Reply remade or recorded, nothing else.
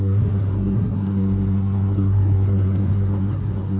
remade